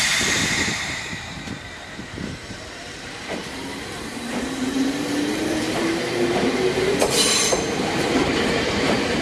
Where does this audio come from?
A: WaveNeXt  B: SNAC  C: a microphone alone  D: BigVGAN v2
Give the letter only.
D